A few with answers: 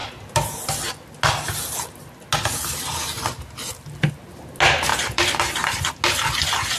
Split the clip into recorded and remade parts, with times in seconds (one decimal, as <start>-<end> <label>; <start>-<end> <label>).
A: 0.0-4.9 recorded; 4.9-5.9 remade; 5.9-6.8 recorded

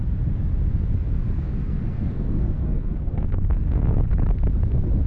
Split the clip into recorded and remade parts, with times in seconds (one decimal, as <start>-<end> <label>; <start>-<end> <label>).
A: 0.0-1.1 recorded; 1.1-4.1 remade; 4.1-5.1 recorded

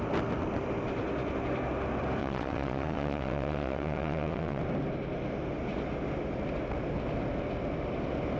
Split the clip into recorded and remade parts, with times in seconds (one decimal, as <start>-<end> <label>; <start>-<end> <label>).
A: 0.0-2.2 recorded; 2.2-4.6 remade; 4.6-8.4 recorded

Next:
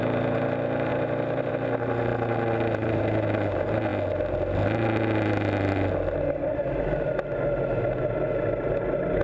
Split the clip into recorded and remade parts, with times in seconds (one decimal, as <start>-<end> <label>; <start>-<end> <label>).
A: 0.0-0.9 recorded; 0.9-1.5 remade; 1.5-9.2 recorded